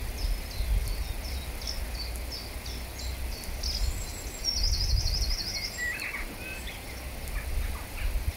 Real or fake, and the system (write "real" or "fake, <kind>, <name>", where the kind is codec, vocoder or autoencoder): real